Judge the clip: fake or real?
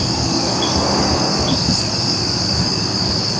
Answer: fake